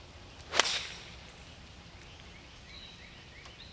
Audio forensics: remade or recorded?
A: recorded